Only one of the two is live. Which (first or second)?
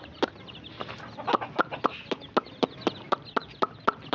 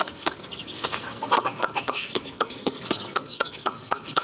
first